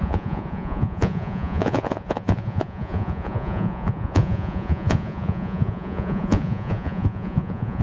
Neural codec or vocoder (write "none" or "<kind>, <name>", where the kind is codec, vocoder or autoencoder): vocoder, Vocos